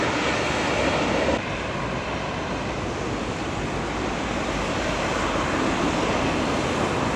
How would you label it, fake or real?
fake